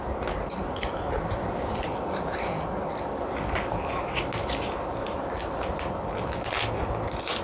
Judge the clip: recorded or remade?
recorded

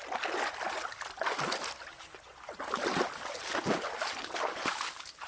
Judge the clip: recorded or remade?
recorded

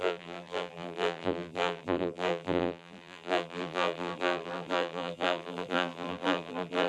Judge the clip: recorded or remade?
remade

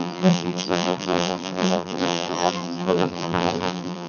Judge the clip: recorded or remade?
remade